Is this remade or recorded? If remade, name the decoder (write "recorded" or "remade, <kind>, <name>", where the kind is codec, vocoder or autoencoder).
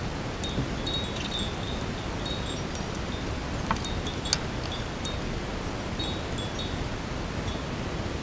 recorded